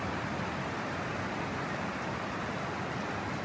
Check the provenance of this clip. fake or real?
real